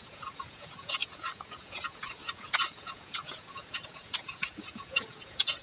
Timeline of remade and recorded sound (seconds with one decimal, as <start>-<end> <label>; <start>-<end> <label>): 0.0-5.6 remade